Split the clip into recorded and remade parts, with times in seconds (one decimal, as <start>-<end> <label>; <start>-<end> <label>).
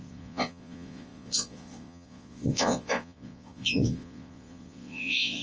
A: 0.0-5.4 remade